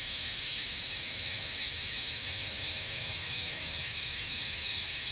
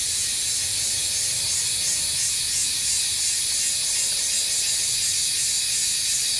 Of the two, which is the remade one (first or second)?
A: first